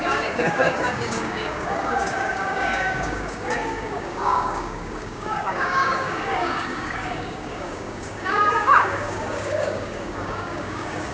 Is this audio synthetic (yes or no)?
yes